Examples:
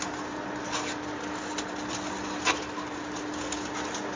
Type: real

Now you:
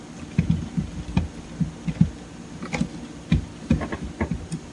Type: real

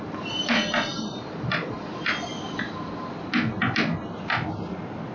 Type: real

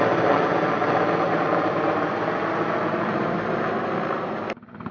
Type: real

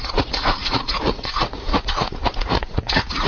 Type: fake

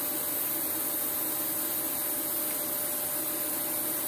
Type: real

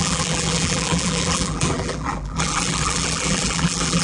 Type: fake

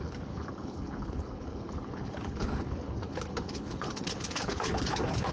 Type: fake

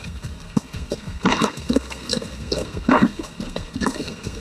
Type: fake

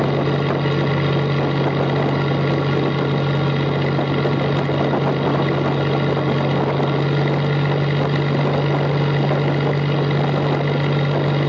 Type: real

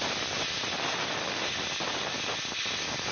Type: real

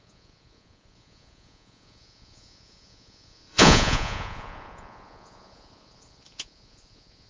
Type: fake